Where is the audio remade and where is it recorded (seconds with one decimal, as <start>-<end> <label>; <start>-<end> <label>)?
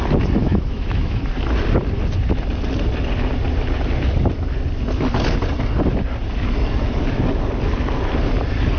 0.0-0.4 recorded; 0.4-1.2 remade; 1.2-8.8 recorded